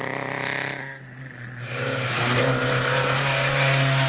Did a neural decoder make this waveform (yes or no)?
no